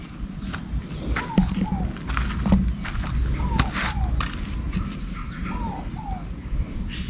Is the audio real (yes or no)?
yes